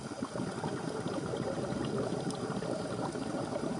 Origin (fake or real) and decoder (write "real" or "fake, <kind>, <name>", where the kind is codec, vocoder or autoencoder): real